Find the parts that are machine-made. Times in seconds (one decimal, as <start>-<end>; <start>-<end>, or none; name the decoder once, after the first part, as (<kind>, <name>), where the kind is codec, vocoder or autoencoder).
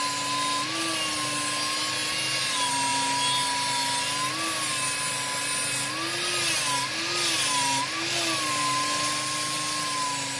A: none